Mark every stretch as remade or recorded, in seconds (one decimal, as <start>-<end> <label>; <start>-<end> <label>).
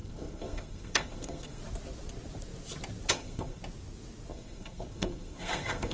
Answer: 0.0-1.6 remade; 1.6-3.1 recorded; 3.1-3.6 remade; 3.6-4.3 recorded; 4.3-5.9 remade